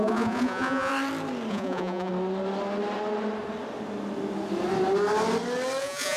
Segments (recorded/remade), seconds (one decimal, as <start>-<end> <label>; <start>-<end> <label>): 0.0-0.9 remade; 0.9-1.5 recorded; 1.5-2.1 remade; 2.1-5.8 recorded; 5.8-6.2 remade